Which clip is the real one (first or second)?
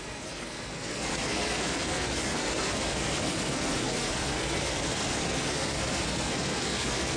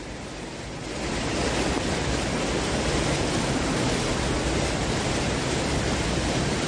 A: second